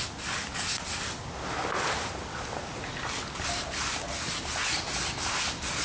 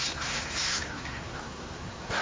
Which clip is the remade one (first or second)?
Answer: second